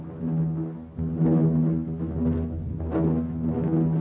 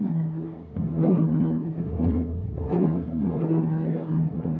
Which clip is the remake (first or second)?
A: second